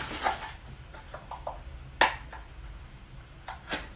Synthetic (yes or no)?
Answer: no